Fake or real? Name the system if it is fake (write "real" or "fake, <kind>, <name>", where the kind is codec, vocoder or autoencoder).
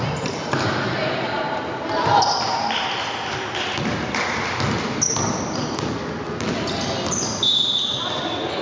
real